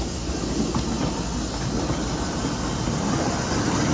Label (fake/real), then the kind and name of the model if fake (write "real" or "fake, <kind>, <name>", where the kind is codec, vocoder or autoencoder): real